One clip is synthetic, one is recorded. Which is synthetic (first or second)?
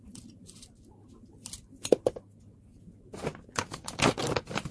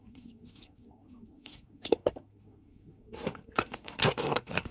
second